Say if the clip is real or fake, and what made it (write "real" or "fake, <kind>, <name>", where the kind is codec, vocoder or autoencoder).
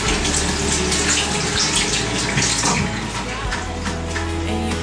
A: real